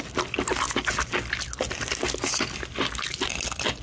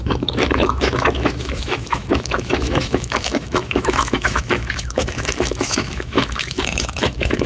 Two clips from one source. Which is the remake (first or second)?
second